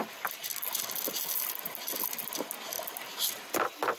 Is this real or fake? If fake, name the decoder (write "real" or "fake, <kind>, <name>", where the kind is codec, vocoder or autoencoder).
real